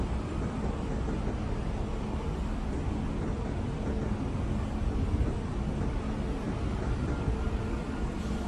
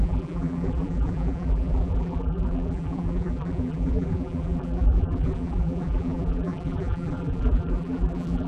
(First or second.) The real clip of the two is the first